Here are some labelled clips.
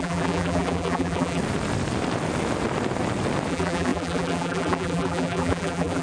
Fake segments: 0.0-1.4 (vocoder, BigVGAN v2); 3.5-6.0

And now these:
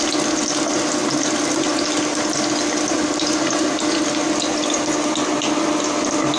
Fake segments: none

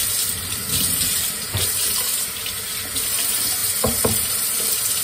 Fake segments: 0.6-2.6 (vocoder, BigVGAN v2); 3.6-5.0

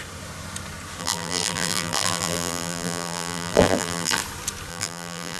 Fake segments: 1.0-4.2 (vocoder, BigVGAN v2); 4.7-5.4

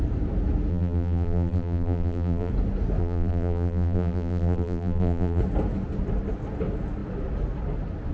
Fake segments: 0.7-2.5 (vocoder, BigVGAN v2); 3.0-5.4

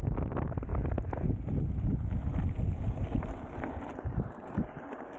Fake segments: none